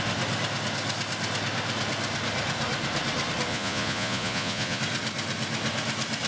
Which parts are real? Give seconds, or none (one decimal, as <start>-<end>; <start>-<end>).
0.0-3.5; 4.8-6.3